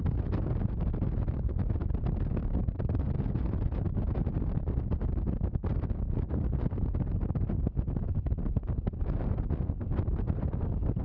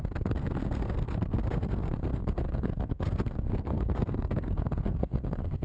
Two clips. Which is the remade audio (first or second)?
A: second